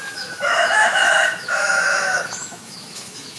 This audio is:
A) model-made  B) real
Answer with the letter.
A